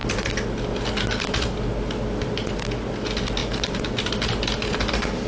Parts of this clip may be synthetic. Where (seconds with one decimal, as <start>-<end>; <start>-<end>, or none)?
none